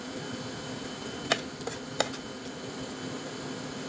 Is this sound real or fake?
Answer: real